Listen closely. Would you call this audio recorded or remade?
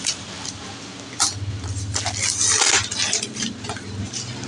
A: recorded